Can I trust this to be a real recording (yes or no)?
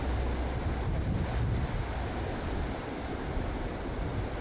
yes